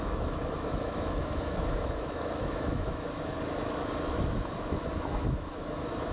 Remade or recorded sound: remade